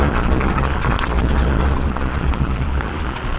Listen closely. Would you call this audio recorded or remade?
remade